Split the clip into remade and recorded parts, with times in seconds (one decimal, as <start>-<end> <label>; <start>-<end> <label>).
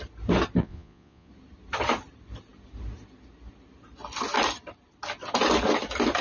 0.0-0.6 recorded; 0.6-1.3 remade; 1.3-6.2 recorded